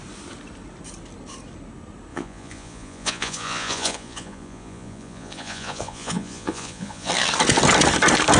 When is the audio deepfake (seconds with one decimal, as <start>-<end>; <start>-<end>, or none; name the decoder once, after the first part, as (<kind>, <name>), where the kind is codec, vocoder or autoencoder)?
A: 2.1-7.1 (vocoder, Vocos)